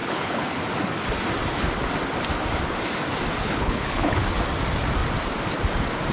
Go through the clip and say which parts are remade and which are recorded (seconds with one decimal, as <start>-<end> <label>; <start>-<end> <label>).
0.0-0.6 remade; 0.6-3.4 recorded; 3.4-4.3 remade; 4.3-6.1 recorded